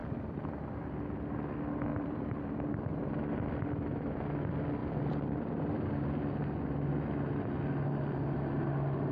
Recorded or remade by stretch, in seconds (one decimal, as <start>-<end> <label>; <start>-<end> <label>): 0.0-0.9 remade; 0.9-1.9 recorded; 1.9-3.1 remade; 3.1-4.8 recorded; 4.8-6.2 remade; 6.2-9.1 recorded